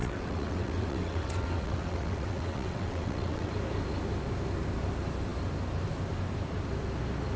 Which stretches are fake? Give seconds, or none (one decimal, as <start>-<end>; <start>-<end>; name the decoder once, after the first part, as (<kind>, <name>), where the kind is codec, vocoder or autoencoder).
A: 0.0-3.5 (vocoder, WaveNeXt)